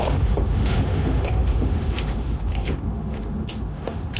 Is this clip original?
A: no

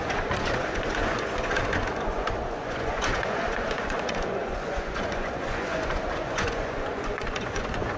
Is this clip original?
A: no